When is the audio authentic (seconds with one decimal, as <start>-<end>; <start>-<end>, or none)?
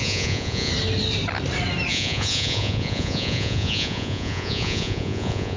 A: 0.7-1.9